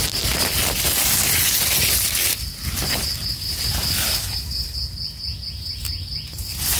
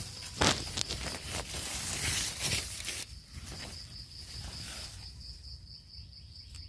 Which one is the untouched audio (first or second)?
first